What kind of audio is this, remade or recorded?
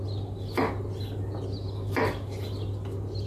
recorded